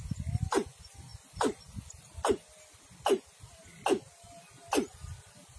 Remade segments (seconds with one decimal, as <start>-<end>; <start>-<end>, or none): none